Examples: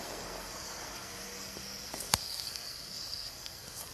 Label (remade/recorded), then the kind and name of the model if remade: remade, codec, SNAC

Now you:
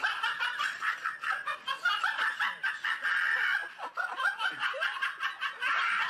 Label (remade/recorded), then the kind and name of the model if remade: recorded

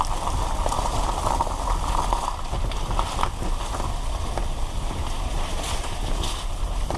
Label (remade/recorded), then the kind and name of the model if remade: recorded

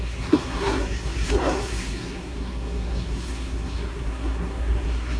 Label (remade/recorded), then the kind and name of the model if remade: remade, codec, SNAC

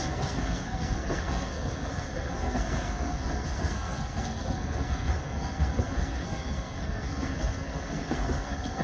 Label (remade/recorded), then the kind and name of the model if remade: remade, codec, SNAC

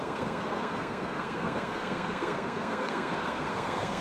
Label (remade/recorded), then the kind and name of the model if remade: remade, codec, SNAC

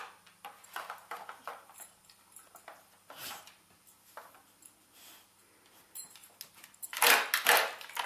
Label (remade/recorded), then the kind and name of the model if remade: recorded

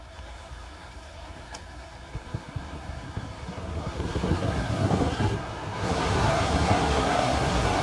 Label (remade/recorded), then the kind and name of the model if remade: remade, codec, SNAC